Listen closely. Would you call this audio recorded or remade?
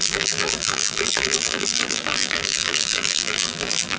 remade